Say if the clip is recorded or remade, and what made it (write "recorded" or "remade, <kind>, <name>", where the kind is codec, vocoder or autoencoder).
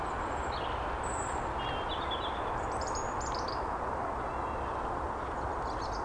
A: recorded